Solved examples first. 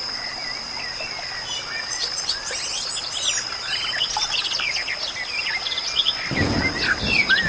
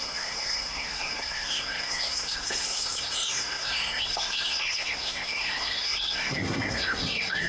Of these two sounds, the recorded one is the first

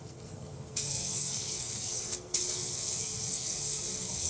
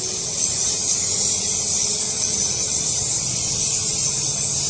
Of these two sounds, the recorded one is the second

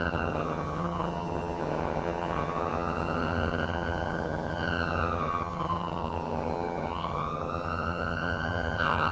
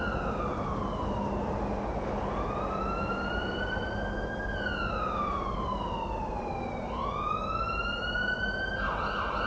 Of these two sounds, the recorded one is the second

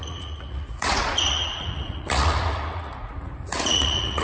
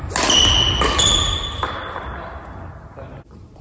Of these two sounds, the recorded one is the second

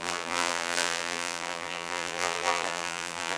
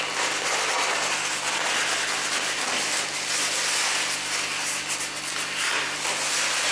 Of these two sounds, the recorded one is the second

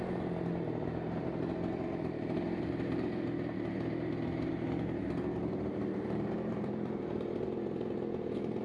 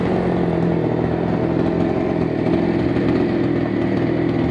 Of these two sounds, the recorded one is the second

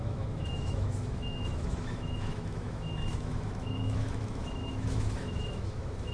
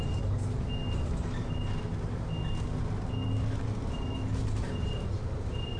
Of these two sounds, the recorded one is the second